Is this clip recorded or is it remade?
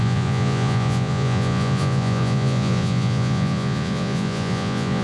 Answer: remade